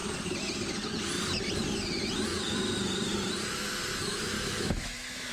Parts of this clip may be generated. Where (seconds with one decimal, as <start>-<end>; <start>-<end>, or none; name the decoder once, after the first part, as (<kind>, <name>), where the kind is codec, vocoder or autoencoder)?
4.0-5.3 (autoencoder, DAC-VAE)